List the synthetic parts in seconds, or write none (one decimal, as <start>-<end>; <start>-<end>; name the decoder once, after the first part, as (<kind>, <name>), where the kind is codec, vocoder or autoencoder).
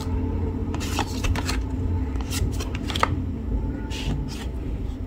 0.6-3.7 (vocoder, BigVGAN v2)